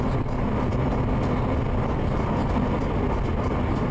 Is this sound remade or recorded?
recorded